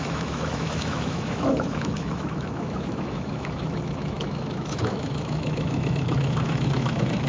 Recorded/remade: remade